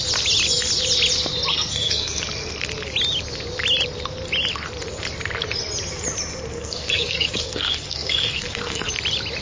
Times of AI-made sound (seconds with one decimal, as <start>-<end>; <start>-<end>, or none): 1.5-2.2; 6.5-8.9